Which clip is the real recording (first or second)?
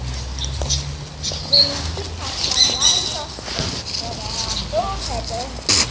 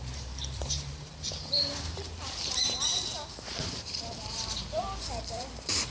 first